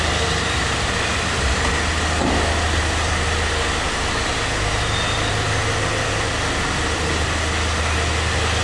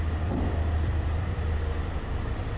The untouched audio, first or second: first